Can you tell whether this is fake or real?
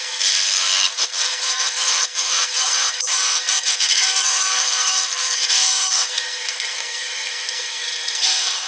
fake